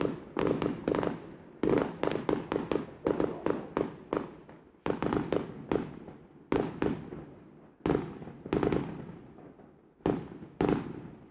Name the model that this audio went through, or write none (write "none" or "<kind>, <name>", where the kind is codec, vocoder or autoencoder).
none